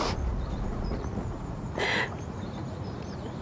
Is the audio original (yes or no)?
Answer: no